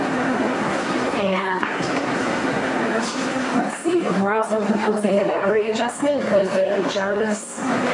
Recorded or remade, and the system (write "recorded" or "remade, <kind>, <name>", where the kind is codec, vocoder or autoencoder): remade, codec, SNAC